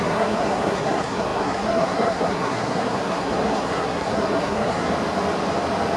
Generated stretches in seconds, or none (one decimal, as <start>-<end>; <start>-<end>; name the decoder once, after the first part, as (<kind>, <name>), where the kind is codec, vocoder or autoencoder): 0.0-4.9 (codec, SNAC)